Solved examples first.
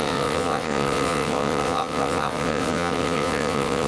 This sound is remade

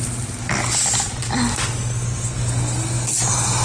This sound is recorded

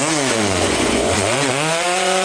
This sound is remade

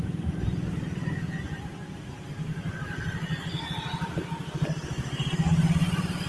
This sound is recorded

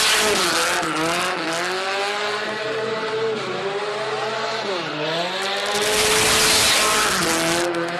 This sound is recorded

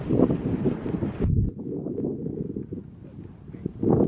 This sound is recorded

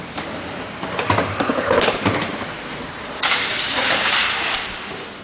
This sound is remade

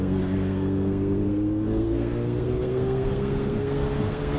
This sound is remade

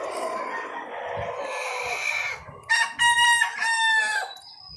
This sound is recorded